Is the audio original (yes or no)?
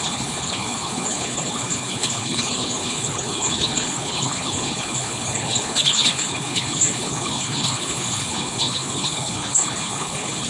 no